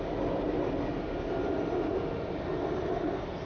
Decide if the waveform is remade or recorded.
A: recorded